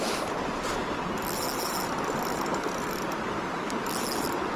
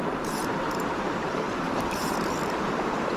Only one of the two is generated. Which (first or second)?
second